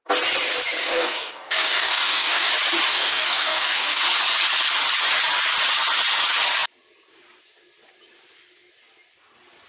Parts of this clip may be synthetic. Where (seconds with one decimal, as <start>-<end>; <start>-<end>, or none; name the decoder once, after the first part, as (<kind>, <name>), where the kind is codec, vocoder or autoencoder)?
0.8-2.5 (codec, DAC); 2.9-4.0